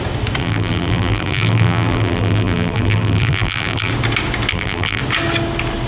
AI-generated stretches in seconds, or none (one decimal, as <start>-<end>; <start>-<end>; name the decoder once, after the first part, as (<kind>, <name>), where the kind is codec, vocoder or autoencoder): 0.4-3.9 (vocoder, BigVGAN v2); 4.5-5.0